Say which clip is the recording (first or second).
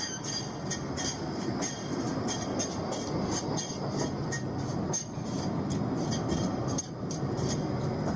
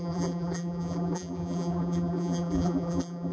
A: first